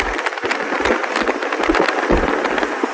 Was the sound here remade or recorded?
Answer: recorded